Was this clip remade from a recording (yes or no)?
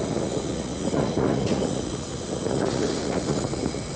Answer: yes